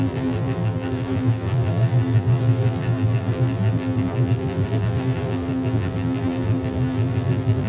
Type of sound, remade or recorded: remade